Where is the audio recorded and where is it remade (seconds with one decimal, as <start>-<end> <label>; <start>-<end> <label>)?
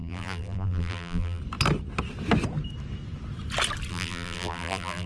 0.0-1.4 remade; 1.4-3.9 recorded; 3.9-5.1 remade